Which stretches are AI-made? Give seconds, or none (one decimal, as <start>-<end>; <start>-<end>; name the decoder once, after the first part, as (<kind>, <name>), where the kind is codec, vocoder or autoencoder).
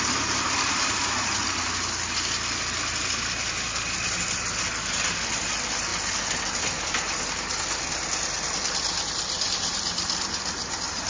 none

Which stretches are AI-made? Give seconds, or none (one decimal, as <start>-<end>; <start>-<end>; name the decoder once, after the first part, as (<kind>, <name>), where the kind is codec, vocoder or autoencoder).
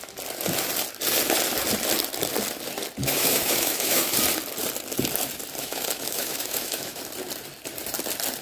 3.0-4.1 (autoencoder, DAC-VAE); 5.6-7.0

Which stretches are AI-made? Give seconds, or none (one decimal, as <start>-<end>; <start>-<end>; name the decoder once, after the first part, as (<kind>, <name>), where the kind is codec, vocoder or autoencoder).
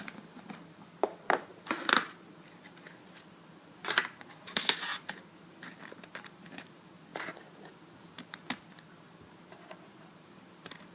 0.0-7.1 (vocoder, BigVGAN v2); 8.1-10.9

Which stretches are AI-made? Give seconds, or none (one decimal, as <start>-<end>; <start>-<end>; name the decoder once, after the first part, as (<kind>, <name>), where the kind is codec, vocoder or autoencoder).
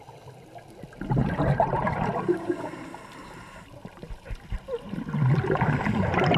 1.2-5.0 (vocoder, BigVGAN v2)